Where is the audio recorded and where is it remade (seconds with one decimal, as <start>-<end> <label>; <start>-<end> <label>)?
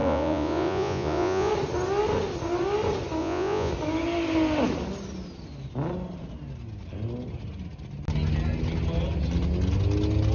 0.0-1.5 remade; 1.5-3.2 recorded; 3.2-3.7 remade; 3.7-10.3 recorded